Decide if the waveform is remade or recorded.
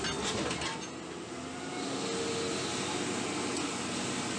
recorded